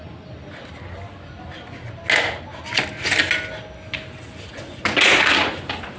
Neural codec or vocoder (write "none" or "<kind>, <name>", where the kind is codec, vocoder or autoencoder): none